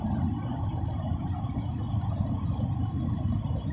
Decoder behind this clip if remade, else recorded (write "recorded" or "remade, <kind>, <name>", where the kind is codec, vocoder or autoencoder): recorded